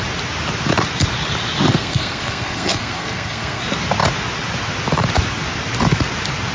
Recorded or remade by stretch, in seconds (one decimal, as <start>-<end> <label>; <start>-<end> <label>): 0.0-1.7 recorded; 1.7-3.6 remade; 3.6-6.5 recorded